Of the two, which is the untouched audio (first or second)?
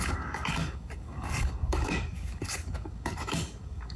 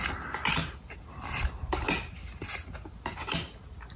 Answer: second